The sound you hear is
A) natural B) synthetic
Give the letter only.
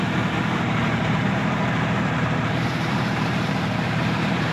B